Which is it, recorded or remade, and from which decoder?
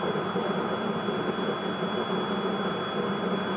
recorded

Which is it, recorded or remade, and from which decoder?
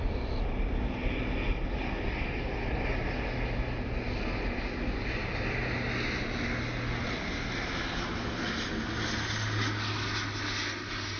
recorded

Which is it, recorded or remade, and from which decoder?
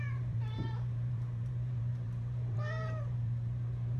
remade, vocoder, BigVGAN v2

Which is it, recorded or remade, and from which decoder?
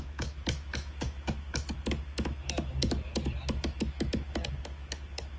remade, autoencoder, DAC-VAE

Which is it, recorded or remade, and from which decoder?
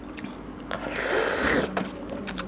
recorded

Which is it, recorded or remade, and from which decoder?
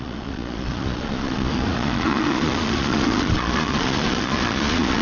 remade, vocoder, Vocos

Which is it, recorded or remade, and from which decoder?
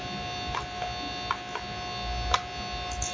recorded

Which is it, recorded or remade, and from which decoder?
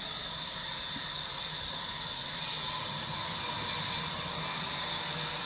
recorded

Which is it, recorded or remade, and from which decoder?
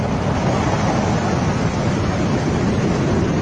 recorded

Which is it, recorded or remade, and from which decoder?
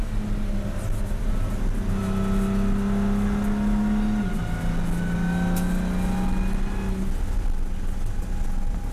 recorded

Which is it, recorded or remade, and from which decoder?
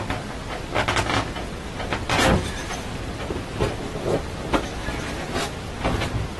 recorded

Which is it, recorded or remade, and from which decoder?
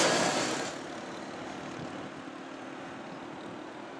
recorded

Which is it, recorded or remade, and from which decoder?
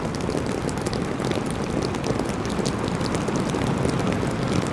recorded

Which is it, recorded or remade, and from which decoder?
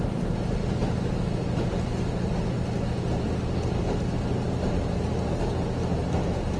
recorded